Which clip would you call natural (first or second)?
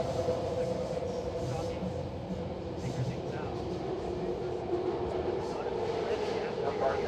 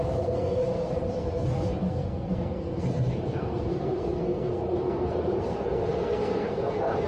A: first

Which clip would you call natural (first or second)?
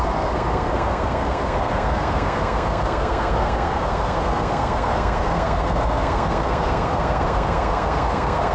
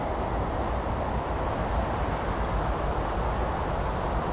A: second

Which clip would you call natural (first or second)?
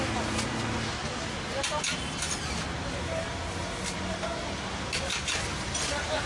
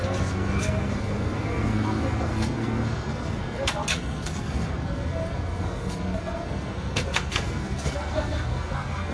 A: first